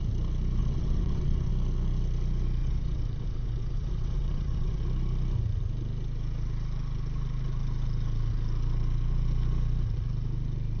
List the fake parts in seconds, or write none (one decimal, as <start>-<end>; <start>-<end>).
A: 0.6-1.5; 2.6-4.8